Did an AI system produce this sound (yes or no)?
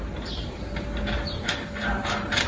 no